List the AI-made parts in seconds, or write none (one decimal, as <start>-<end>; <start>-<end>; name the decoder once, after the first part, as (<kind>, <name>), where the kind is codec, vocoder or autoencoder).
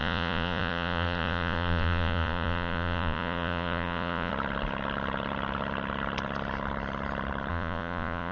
0.0-4.3 (vocoder, Vocos); 7.5-8.3